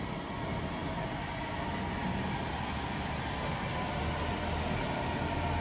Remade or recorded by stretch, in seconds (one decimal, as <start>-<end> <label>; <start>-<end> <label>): 0.0-5.6 recorded